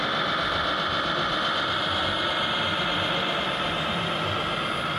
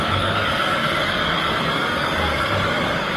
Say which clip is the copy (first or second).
second